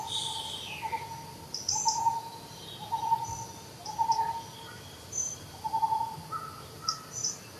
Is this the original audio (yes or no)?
yes